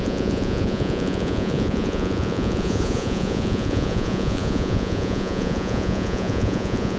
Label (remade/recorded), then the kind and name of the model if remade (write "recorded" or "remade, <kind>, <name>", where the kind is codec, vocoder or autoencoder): remade, vocoder, Vocos